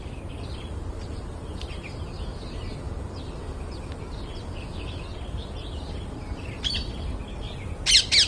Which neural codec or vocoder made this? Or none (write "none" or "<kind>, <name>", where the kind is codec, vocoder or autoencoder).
none